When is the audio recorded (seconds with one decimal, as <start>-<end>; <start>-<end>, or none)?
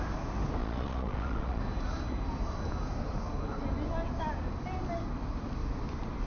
0.0-0.6; 1.6-6.3